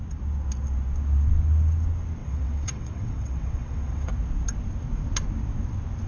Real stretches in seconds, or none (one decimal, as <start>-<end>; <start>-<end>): 0.0-2.2; 4.1-6.1